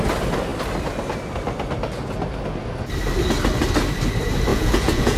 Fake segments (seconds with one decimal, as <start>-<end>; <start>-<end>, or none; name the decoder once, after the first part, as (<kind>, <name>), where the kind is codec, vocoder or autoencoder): 4.5-5.2 (vocoder, Vocos)

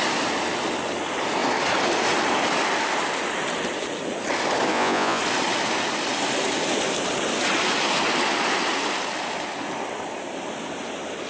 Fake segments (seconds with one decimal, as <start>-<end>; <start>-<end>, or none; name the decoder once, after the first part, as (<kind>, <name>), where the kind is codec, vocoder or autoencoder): 4.7-5.2 (vocoder, Vocos)

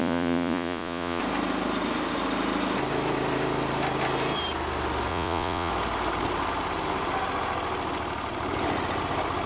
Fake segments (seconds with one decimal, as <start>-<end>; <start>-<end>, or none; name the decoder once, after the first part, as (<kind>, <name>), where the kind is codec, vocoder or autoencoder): 0.0-1.2 (vocoder, Vocos); 5.1-5.7

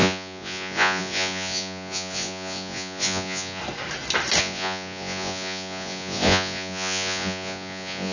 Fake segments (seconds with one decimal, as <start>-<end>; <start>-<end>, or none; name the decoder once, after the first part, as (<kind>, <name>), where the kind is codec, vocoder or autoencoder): 0.0-3.6 (vocoder, Vocos); 4.4-8.1